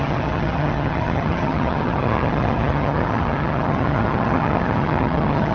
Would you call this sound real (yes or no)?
no